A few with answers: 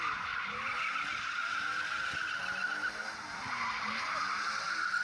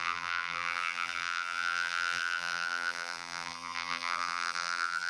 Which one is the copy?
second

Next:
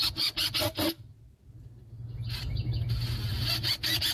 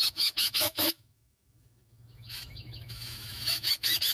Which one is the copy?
second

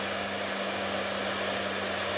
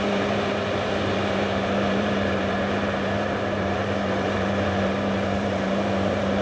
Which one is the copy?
second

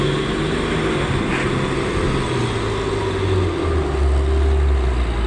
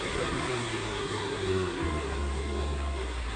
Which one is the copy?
second